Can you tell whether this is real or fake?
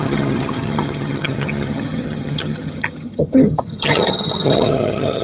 fake